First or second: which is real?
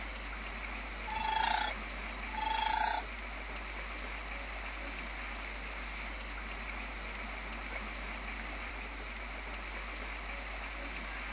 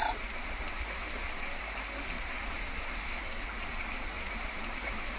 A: first